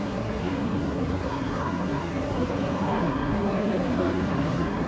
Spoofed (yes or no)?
yes